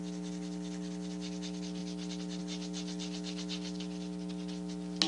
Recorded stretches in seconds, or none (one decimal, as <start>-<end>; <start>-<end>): 0.0-5.1

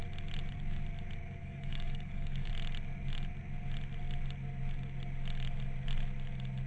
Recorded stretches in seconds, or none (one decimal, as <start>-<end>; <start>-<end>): 0.0-1.4; 2.5-6.7

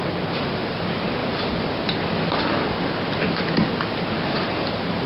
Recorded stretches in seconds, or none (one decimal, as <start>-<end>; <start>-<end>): 0.0-5.1

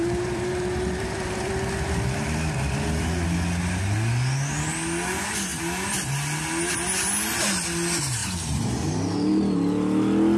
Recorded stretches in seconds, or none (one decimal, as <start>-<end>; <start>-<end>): 1.5-8.2; 9.4-10.4

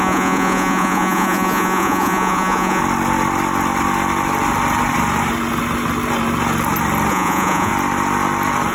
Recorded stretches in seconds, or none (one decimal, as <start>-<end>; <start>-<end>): 2.8-7.1; 7.7-8.7

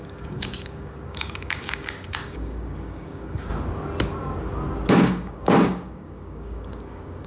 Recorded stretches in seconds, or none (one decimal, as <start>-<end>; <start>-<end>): 3.5-4.9